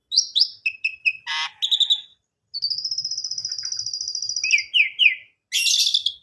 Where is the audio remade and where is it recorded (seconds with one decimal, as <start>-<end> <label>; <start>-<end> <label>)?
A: 0.0-6.2 recorded